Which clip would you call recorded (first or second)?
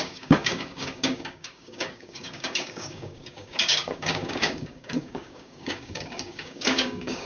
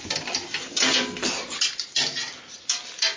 second